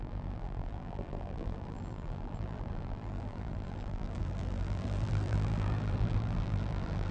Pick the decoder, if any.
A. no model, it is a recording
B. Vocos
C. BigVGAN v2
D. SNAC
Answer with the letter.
C